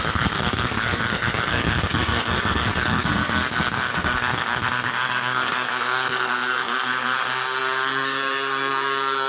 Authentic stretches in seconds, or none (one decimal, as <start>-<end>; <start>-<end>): none